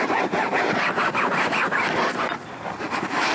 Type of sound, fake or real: real